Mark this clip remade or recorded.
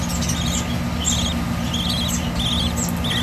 recorded